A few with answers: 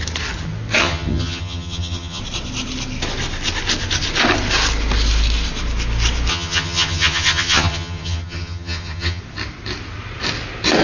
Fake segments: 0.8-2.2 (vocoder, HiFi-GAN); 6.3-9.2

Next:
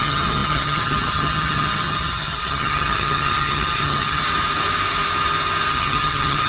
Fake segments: 0.0-4.2 (vocoder, HiFi-GAN); 5.7-6.5

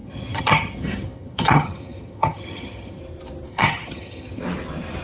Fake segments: 0.0-3.0 (vocoder, HiFi-GAN); 3.5-4.4

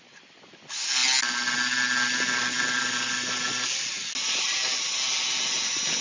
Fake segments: none

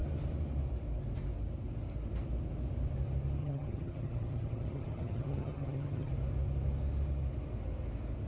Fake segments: 3.4-6.1 (vocoder, HiFi-GAN)

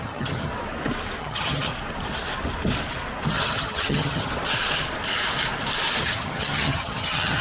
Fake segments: 0.0-0.5 (vocoder, HiFi-GAN); 1.2-1.7; 3.3-4.3; 6.0-7.4

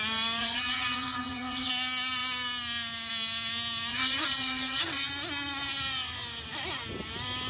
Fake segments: 0.4-1.7 (vocoder, HiFi-GAN); 3.9-5.1